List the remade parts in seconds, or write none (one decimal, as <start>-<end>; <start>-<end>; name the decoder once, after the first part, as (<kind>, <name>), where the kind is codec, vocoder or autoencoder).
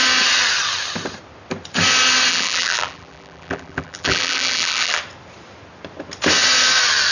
2.3-5.0 (vocoder, BigVGAN v2)